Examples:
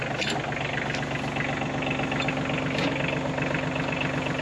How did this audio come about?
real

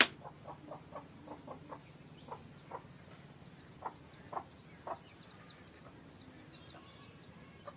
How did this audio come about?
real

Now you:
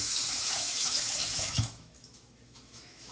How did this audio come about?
fake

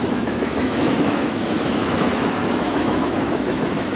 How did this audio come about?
fake